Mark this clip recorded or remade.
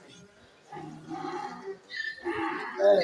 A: recorded